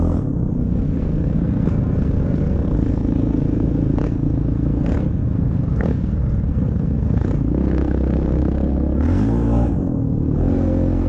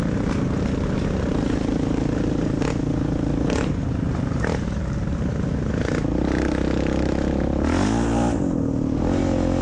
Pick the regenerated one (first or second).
first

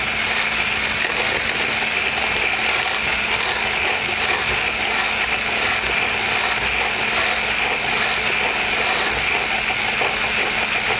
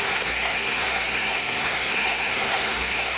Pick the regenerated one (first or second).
second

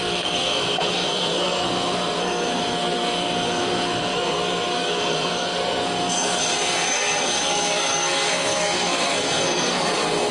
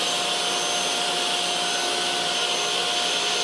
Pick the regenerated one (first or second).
first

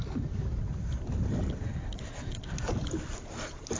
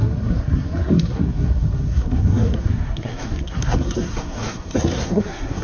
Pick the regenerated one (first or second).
second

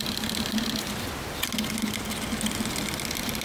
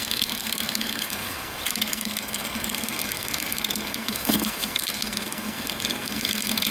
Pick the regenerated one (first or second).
second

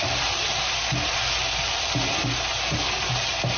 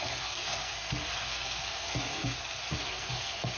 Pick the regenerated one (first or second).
second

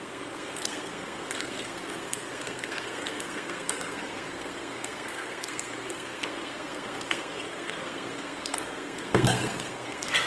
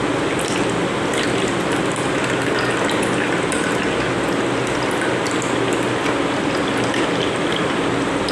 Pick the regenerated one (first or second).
first